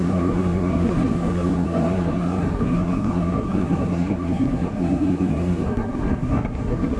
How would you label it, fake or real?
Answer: fake